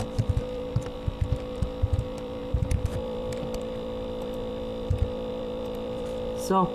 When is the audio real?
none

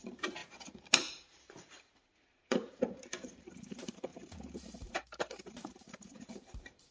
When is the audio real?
0.4-1.1

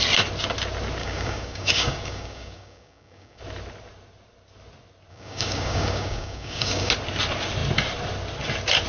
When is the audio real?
0.0-1.0; 3.4-5.1; 6.9-8.9